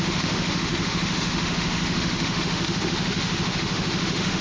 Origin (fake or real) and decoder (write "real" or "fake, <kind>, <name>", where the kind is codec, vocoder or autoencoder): fake, autoencoder, DAC-VAE